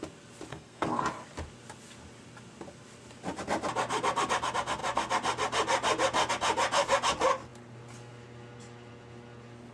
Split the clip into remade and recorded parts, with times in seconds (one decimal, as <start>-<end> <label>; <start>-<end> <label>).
0.0-0.5 recorded; 0.5-1.0 remade; 1.0-9.7 recorded